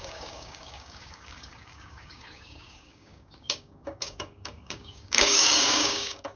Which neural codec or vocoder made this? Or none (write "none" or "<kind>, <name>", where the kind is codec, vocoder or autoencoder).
codec, DAC